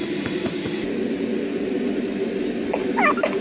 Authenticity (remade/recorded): recorded